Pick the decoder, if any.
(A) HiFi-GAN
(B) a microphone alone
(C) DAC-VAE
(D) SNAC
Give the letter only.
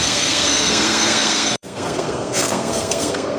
D